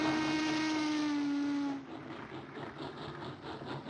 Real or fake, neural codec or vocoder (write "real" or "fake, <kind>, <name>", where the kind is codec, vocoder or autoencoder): real